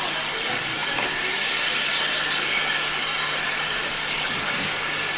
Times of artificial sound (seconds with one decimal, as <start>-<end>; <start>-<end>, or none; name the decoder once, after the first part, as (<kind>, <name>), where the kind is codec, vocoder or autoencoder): none